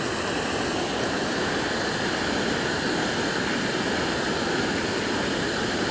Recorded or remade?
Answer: recorded